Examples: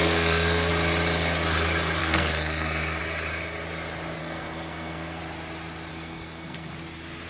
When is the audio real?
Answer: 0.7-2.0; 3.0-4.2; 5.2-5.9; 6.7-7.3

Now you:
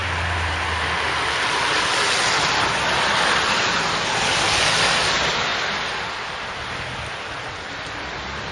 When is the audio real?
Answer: 0.0-8.5

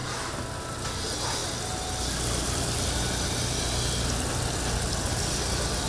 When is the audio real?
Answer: 0.0-5.9

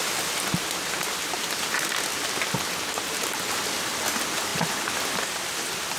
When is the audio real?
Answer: 0.0-6.0